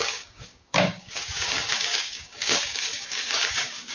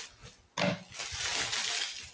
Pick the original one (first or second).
second